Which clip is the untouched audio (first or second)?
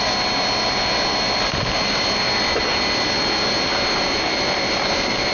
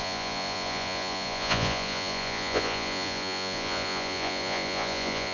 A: first